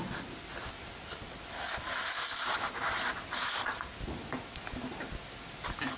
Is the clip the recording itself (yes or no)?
yes